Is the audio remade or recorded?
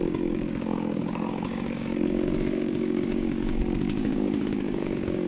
remade